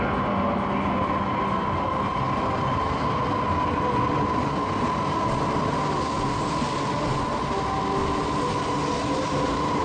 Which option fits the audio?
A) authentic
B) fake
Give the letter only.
A